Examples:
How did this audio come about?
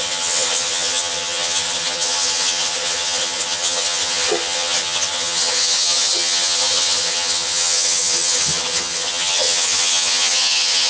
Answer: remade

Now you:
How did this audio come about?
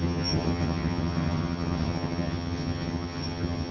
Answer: remade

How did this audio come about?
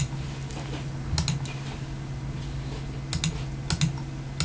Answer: recorded